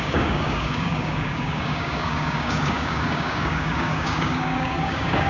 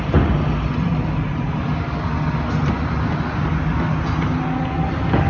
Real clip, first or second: second